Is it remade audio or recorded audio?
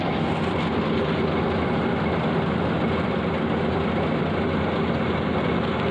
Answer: recorded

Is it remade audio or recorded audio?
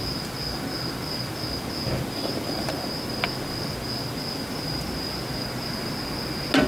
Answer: recorded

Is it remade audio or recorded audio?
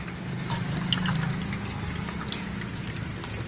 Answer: recorded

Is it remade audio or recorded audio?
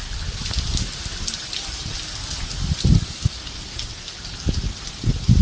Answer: recorded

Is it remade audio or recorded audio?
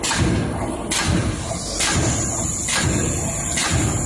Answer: recorded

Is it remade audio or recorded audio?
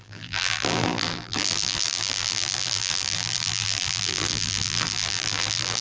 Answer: remade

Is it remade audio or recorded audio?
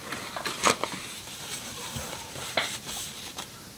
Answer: remade